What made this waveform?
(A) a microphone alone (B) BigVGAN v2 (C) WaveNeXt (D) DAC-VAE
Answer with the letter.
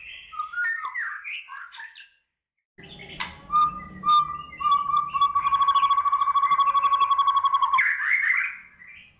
A